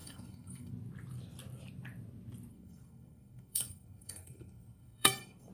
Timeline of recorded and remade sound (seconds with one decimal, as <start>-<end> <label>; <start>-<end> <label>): 0.0-0.7 remade; 0.7-2.5 recorded; 2.5-5.5 remade